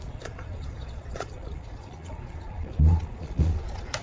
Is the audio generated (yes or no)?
yes